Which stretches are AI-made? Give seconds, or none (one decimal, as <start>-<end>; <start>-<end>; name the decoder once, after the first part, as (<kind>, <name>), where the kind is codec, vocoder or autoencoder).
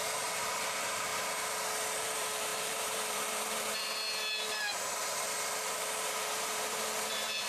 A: 0.0-1.1 (vocoder, BigVGAN v2); 2.0-7.5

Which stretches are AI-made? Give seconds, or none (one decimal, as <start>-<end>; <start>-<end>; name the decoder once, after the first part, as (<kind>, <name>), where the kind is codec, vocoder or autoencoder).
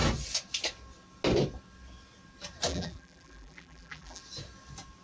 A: 2.7-4.2 (vocoder, BigVGAN v2)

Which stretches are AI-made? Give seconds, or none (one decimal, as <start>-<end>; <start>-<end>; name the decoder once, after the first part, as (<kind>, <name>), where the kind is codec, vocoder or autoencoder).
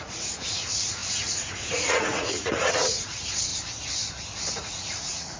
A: 0.0-3.5 (vocoder, Vocos); 4.5-5.4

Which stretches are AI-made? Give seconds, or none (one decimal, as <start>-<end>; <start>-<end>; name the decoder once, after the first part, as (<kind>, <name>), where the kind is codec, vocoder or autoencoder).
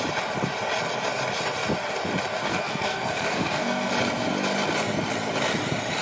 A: 2.5-3.9 (codec, SNAC)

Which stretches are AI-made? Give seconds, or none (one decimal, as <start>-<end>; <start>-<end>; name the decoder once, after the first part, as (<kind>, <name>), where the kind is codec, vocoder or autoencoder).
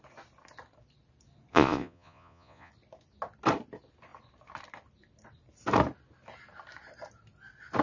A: 1.5-2.7 (vocoder, Vocos)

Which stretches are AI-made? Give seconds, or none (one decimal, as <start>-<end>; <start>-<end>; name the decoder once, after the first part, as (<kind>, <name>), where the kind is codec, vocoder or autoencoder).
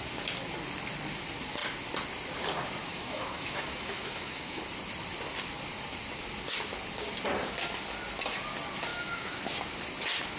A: 2.8-4.6 (autoencoder, DAC-VAE); 8.9-9.4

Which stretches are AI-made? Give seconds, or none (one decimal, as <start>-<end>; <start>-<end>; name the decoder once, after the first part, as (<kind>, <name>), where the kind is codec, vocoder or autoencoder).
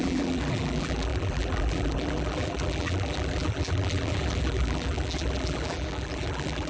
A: 0.0-6.7 (vocoder, BigVGAN v2)